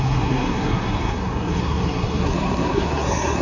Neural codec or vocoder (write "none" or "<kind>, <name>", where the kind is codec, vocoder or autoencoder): codec, SNAC